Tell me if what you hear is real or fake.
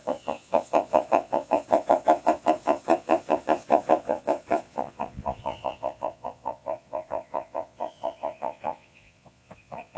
fake